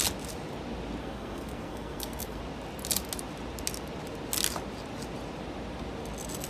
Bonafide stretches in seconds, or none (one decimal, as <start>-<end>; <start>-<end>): 0.0-1.0; 2.4-6.5